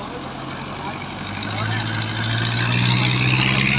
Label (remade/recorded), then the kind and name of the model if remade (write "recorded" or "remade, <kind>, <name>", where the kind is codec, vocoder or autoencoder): recorded